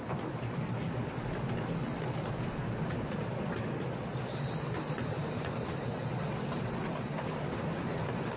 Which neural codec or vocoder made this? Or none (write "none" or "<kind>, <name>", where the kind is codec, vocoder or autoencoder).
none